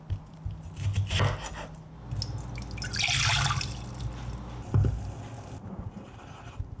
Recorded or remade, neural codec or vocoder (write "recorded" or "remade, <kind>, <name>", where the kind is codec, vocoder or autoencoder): recorded